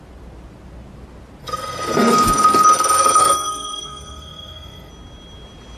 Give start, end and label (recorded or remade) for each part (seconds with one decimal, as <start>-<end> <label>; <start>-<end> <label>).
0.0-1.4 recorded; 1.4-4.9 remade; 4.9-5.8 recorded